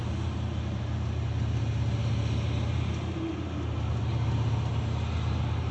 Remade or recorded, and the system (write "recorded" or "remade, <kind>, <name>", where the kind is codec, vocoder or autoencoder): recorded